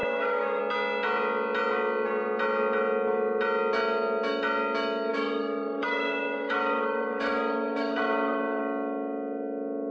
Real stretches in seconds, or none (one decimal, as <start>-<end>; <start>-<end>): 0.6-5.1; 8.6-9.9